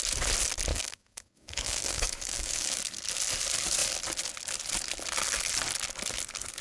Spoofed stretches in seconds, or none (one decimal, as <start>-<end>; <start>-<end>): 0.7-2.8